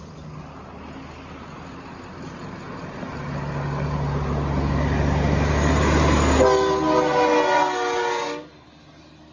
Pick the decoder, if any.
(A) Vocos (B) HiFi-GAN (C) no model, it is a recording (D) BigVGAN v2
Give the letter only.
C